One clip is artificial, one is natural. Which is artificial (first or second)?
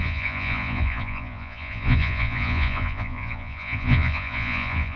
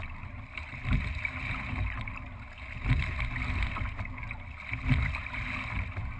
first